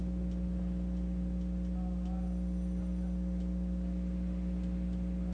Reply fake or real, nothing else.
real